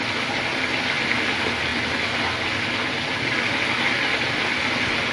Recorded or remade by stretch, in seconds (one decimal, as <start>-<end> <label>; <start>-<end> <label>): 0.0-5.1 recorded